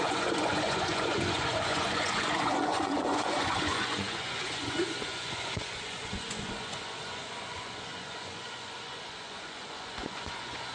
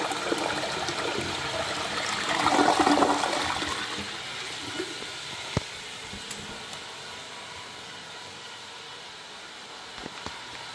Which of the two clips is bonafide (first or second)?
second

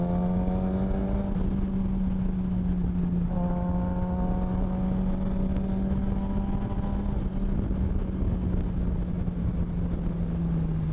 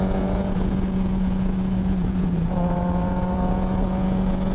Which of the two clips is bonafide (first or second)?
first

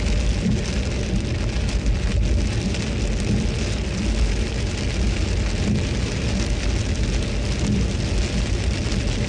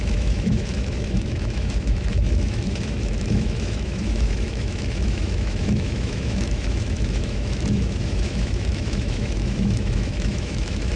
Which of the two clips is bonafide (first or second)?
first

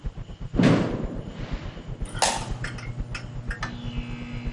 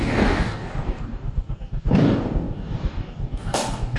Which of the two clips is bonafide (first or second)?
first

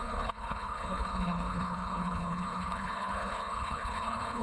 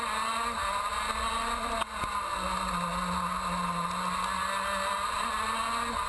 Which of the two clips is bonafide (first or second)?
second